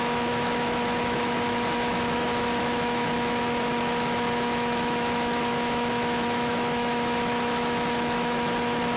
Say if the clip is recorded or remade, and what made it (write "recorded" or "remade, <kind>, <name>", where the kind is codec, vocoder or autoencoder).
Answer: remade, autoencoder, DAC-VAE